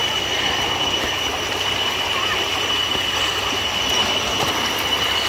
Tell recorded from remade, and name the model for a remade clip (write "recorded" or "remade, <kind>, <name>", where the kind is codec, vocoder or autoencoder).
recorded